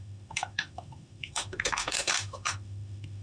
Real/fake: fake